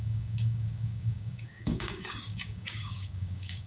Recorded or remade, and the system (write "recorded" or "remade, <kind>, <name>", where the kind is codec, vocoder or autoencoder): remade, codec, DAC